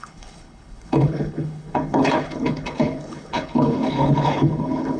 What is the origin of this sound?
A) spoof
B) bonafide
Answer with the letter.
A